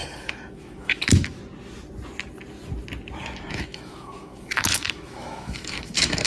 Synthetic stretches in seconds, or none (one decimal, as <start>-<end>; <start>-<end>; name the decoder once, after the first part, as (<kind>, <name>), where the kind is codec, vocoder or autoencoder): 0.0-1.4 (autoencoder, DAC-VAE); 3.5-6.3